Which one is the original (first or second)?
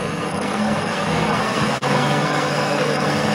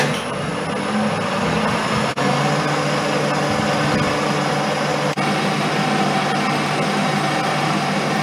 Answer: second